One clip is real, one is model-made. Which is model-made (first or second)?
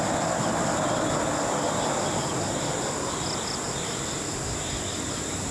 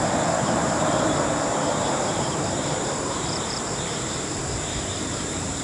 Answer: second